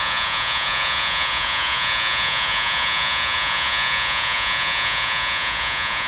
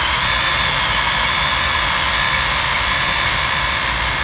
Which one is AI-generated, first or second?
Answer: first